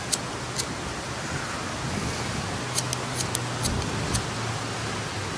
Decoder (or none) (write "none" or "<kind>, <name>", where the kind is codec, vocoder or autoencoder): none